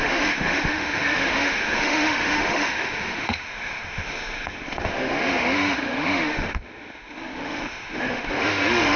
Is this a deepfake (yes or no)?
yes